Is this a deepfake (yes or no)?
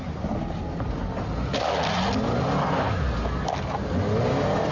no